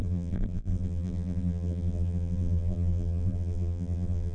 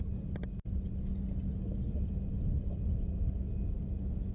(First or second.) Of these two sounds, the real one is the second